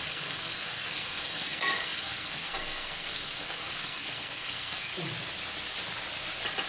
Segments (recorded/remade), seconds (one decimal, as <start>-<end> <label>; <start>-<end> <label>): 0.0-4.9 remade; 4.9-6.7 recorded